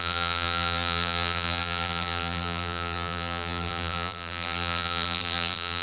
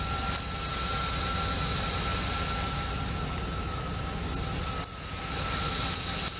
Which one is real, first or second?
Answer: second